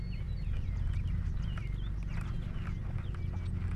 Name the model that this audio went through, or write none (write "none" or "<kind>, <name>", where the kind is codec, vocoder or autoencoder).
none